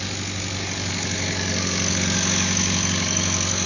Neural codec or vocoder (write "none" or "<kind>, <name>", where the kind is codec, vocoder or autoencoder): codec, DAC